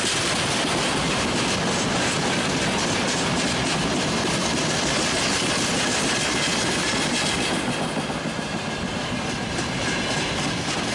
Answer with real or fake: fake